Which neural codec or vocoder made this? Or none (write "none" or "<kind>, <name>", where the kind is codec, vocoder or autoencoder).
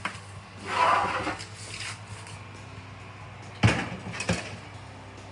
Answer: none